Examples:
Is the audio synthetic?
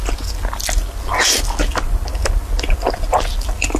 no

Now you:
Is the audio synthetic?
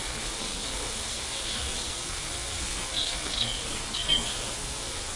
yes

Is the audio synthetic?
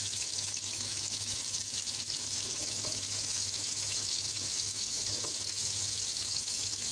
yes